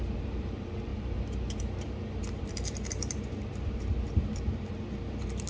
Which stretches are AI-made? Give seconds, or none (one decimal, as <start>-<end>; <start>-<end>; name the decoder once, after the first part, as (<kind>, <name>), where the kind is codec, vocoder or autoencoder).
0.0-5.5 (vocoder, BigVGAN v2)